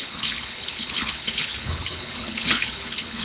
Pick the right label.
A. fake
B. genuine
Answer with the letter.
A